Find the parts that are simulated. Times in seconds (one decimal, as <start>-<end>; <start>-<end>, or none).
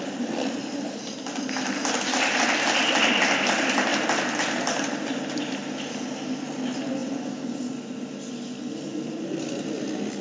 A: none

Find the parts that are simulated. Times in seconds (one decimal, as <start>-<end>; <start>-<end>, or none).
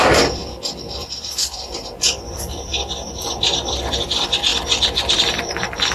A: 0.0-5.9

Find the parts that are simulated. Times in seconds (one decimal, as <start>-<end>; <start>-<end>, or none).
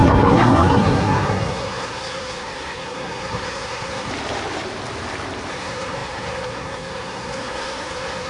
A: 0.0-4.1; 5.5-8.3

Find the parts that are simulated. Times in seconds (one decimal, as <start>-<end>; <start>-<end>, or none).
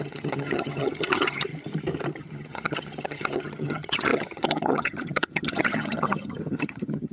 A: 0.0-1.5; 2.2-7.1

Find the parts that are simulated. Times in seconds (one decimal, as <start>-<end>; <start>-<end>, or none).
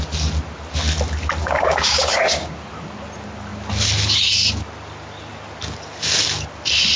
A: 1.4-2.5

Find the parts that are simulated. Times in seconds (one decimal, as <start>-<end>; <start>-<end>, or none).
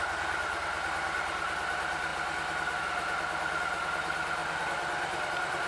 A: 4.4-5.3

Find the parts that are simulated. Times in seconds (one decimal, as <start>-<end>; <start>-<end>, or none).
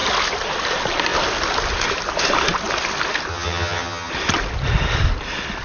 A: 3.3-4.1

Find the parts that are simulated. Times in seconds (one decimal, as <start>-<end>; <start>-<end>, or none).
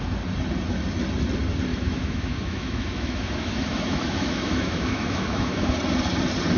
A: 1.7-5.7